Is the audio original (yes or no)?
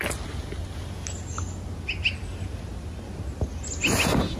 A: yes